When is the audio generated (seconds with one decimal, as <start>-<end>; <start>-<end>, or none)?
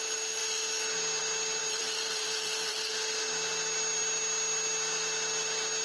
1.6-2.9